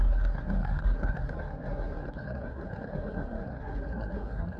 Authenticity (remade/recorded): remade